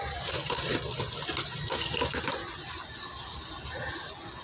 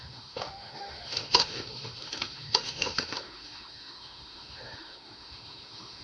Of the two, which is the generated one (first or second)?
second